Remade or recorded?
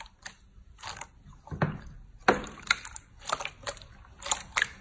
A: recorded